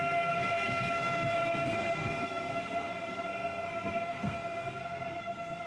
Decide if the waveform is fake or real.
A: fake